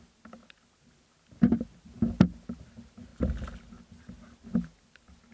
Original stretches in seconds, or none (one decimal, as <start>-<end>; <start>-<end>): 0.0-5.3